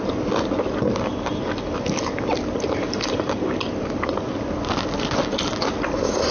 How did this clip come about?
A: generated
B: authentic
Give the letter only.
B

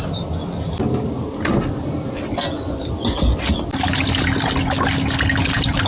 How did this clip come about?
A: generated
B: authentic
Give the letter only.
B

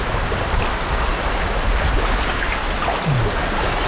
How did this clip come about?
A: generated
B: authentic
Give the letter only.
B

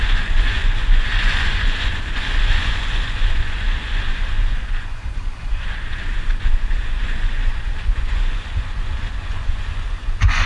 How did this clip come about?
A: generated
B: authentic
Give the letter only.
A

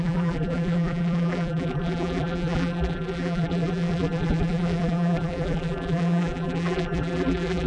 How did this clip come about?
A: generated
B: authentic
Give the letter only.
A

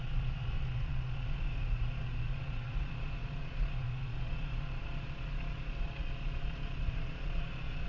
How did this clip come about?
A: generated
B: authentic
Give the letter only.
A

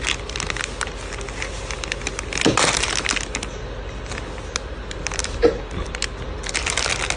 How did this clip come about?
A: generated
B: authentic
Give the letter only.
B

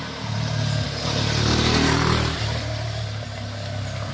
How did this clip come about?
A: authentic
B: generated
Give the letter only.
A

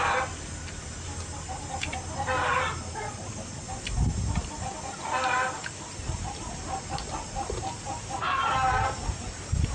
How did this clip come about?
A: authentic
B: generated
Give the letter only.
A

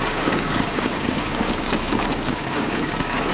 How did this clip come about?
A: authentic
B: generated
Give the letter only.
B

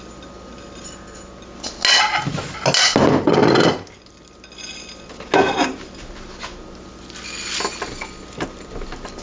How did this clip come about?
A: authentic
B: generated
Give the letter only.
A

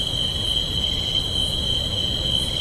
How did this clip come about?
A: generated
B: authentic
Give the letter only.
B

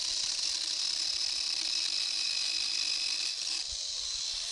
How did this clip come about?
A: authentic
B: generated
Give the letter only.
A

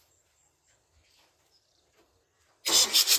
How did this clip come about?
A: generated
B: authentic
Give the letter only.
A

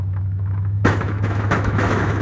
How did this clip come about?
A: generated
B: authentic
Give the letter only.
A